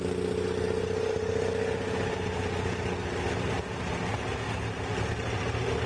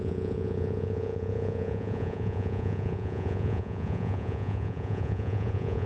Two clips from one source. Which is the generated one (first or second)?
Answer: second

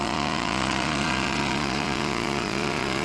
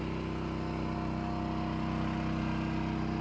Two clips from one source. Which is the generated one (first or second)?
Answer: first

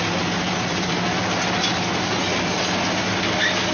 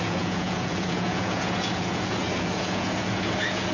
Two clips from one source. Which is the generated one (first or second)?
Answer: second